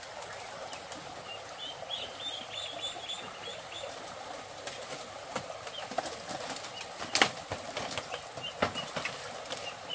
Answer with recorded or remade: recorded